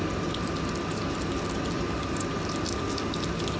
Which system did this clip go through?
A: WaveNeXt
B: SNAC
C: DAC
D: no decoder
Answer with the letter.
D